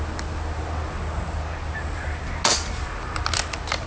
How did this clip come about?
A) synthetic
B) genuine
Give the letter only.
B